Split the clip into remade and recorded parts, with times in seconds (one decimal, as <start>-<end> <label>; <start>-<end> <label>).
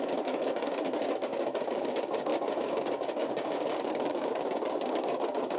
0.0-5.6 remade